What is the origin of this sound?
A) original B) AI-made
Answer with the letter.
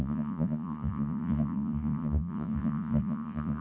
B